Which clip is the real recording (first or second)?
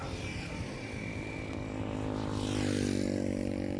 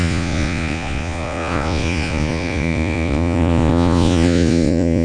first